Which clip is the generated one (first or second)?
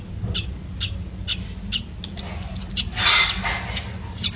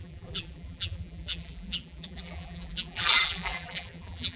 second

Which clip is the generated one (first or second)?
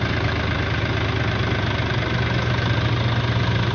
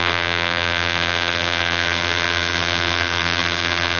second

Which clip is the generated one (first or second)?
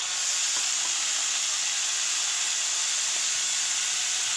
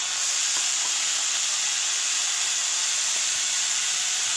second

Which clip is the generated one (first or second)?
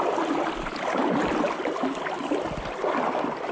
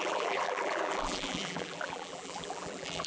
second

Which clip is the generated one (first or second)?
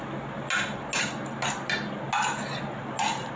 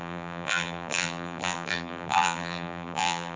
second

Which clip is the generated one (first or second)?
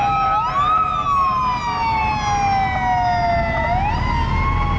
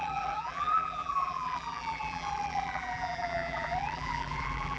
second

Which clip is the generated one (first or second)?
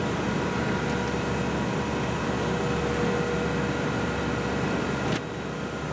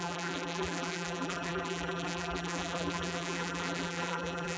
second